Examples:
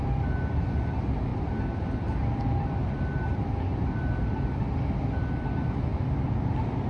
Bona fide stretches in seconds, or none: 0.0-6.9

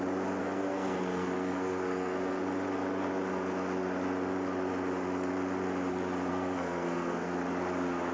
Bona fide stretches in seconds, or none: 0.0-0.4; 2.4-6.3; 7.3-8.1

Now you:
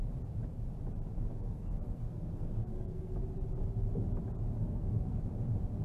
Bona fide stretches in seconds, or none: 0.0-1.3; 3.2-4.6; 5.2-5.8